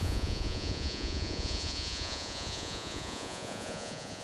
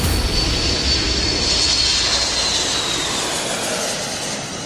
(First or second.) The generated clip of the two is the first